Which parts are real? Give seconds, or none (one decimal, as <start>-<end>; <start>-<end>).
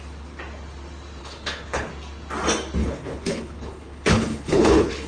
0.0-1.2; 1.9-2.8